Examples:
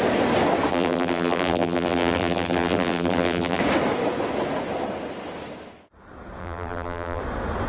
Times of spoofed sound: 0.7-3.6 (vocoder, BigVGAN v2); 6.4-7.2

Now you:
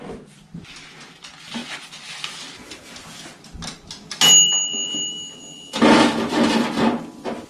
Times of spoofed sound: none

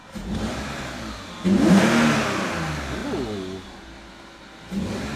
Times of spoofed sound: none

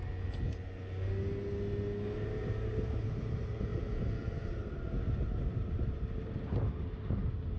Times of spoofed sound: none

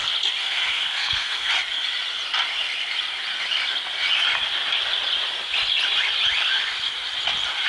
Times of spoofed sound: 0.4-1.5 (codec, SNAC)